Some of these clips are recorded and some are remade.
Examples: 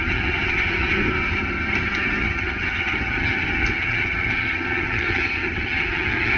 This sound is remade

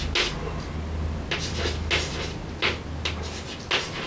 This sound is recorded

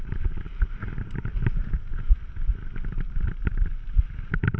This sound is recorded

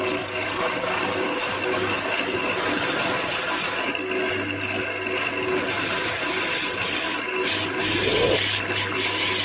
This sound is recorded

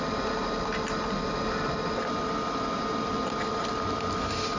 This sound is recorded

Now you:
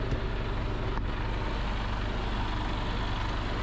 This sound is recorded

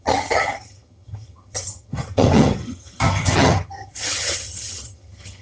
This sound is remade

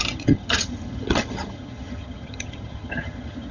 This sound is remade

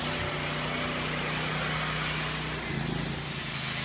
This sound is recorded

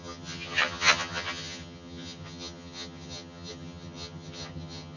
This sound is remade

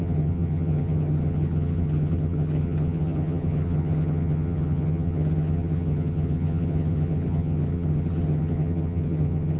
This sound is remade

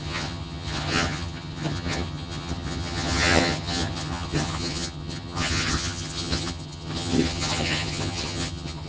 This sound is remade